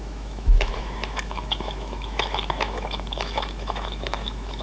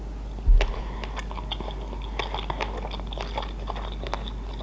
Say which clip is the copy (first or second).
first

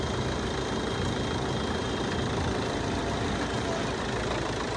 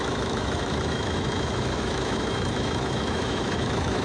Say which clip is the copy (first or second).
second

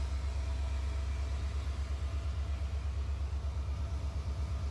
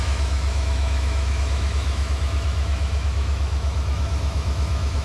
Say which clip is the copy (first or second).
second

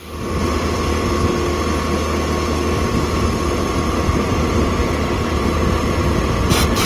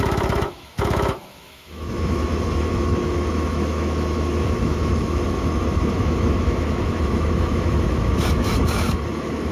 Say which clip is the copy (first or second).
second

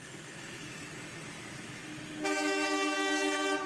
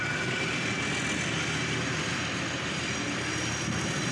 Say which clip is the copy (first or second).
first